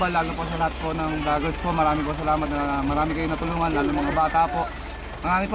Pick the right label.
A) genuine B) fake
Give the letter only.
A